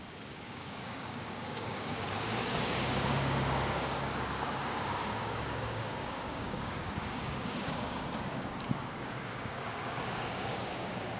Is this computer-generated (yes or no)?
yes